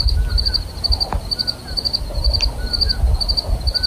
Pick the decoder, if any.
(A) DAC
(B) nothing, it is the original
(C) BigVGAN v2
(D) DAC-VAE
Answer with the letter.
B